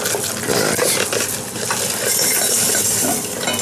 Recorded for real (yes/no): yes